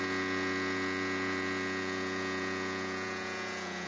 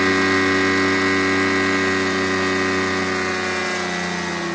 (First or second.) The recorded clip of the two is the second